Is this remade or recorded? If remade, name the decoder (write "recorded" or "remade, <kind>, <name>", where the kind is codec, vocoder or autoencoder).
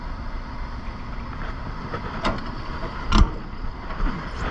recorded